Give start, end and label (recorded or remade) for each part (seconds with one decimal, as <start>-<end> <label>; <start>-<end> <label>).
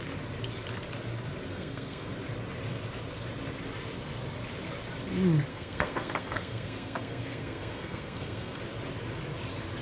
0.0-1.5 recorded; 1.5-2.1 remade; 2.1-5.5 recorded; 5.5-8.6 remade; 8.6-9.8 recorded